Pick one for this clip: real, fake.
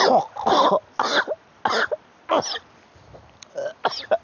real